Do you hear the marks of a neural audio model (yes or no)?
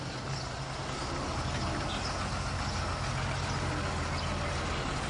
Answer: no